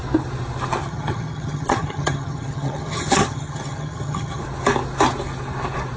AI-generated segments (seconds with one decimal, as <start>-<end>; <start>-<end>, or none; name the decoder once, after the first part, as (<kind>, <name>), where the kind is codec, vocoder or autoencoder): 0.8-4.4 (vocoder, HiFi-GAN)